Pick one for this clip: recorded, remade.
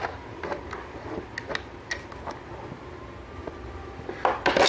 recorded